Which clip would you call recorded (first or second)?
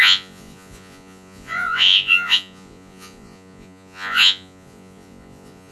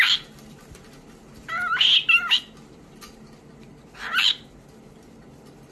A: second